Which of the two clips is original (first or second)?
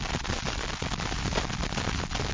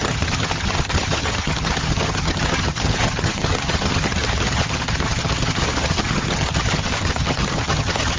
first